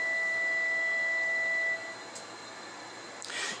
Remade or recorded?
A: recorded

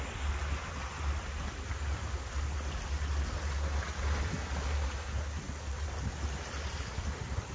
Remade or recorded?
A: recorded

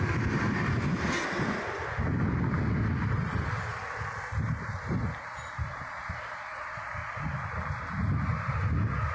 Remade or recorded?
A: recorded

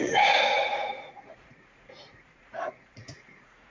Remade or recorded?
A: remade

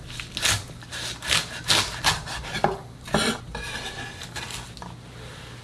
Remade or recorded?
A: recorded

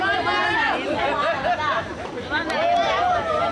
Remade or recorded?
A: recorded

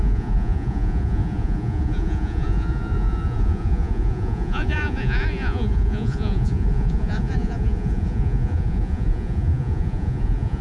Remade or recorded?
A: remade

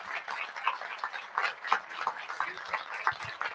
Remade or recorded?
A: recorded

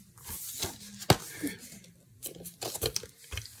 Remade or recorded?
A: recorded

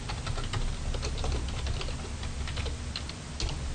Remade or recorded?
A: recorded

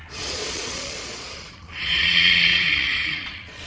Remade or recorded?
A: remade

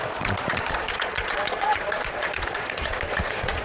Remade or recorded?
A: remade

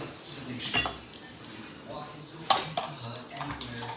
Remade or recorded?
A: recorded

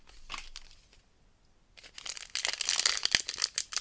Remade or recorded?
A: recorded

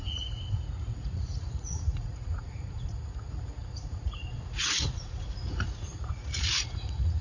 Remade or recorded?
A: remade